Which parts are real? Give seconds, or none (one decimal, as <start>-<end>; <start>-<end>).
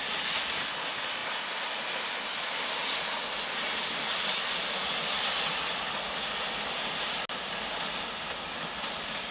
0.0-9.3